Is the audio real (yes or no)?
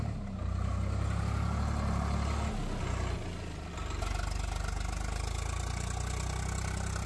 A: yes